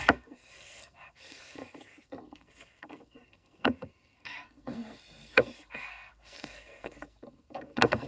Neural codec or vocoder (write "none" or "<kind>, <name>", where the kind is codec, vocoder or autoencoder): codec, SNAC